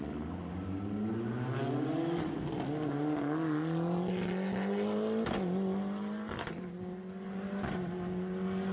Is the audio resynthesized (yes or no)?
no